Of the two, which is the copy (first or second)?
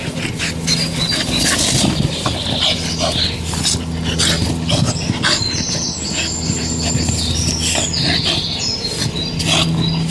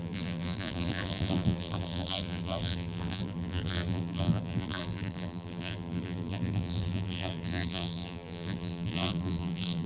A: second